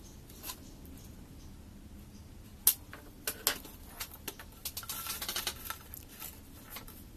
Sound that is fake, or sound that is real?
real